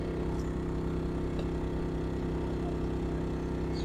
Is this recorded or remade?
recorded